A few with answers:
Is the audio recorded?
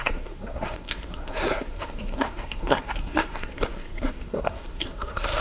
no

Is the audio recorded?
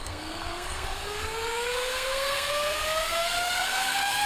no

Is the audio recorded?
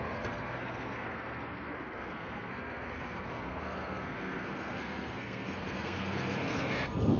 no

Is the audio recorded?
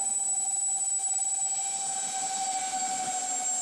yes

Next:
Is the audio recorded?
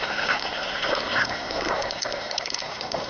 no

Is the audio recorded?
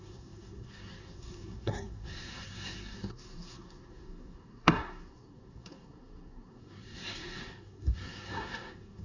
no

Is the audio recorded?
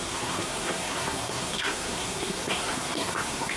no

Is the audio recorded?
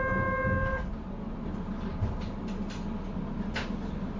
yes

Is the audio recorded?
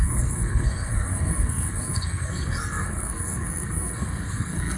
no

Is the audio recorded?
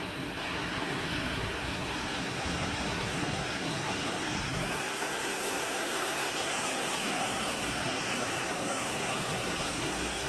no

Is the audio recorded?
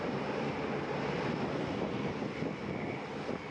yes